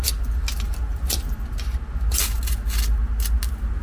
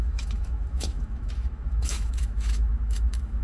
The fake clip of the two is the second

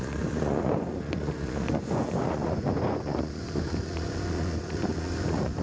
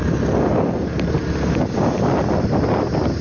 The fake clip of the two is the first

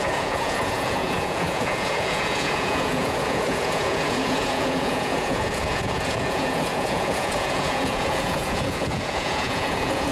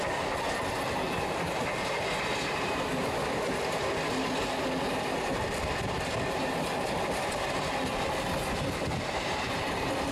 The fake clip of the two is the first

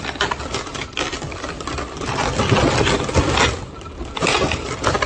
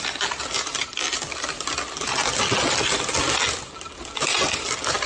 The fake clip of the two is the first